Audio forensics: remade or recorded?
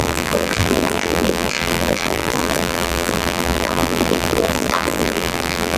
remade